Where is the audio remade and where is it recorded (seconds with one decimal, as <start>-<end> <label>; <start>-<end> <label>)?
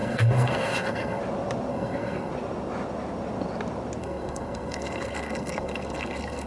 0.0-1.2 remade; 1.2-1.7 recorded; 1.7-2.3 remade; 2.3-4.0 recorded; 4.0-6.5 remade